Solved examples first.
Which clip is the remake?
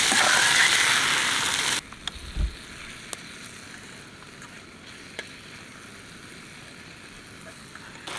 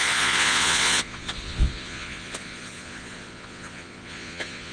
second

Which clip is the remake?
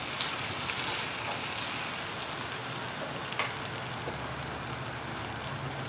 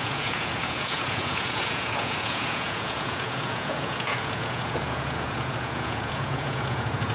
second